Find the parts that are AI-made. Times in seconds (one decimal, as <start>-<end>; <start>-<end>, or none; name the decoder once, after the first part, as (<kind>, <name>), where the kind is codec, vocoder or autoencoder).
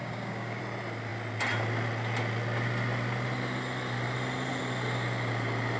0.0-0.6 (codec, DAC)